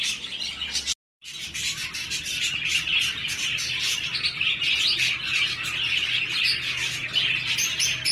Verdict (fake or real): real